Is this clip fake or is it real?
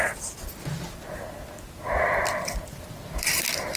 real